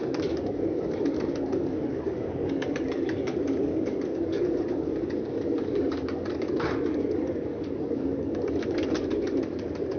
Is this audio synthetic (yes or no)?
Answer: yes